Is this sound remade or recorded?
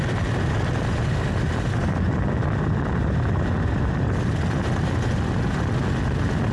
recorded